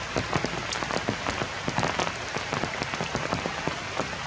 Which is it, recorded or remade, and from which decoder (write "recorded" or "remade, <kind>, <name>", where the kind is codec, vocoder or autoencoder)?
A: recorded